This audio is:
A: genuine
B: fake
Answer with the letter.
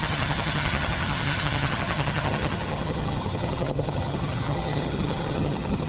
B